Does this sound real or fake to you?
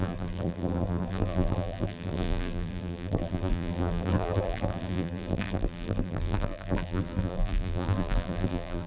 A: fake